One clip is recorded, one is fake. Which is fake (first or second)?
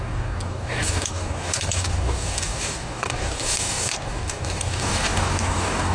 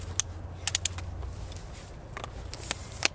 first